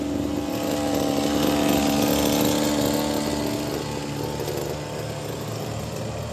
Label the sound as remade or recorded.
recorded